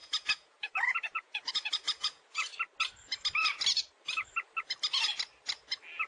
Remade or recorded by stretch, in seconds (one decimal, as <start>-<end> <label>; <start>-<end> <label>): 0.0-2.5 remade; 2.5-6.1 recorded